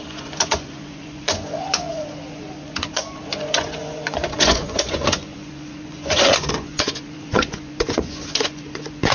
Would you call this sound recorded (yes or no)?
no